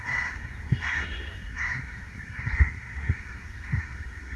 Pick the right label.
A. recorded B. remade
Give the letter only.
B